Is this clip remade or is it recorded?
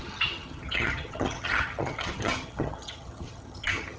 remade